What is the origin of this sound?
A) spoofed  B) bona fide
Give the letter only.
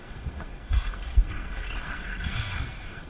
A